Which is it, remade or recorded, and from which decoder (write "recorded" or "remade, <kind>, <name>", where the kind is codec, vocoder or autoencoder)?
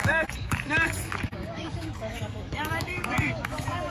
remade, codec, DAC